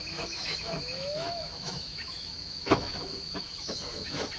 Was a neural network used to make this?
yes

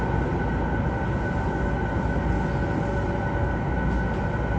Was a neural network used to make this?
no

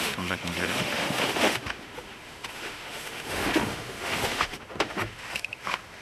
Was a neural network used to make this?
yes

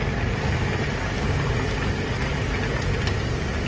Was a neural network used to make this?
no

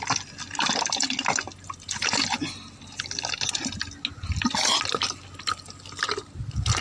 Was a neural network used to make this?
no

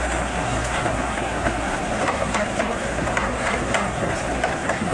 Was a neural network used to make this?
yes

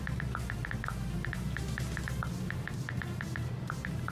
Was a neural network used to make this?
no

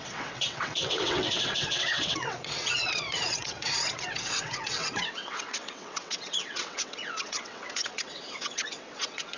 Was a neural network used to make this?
yes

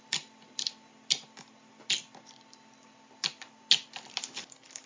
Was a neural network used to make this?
no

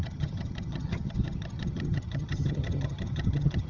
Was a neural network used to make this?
yes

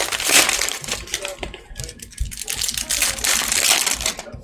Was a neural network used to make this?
no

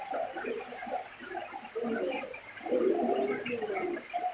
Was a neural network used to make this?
no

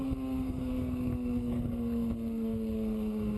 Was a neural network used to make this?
yes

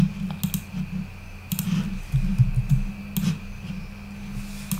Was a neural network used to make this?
no